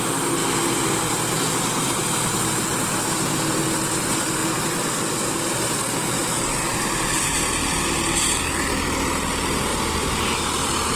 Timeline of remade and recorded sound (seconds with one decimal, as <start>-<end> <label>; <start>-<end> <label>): 0.0-11.0 recorded